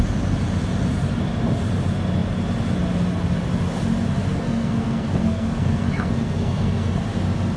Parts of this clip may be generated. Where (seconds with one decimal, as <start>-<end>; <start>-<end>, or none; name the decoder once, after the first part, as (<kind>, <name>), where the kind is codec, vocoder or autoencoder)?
4.3-7.0 (codec, SNAC)